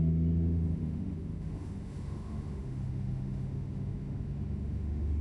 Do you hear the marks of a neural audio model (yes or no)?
yes